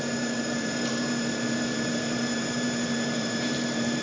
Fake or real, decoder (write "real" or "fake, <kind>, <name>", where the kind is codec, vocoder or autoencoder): fake, vocoder, BigVGAN v2